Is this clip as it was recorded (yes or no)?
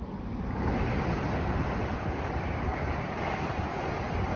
yes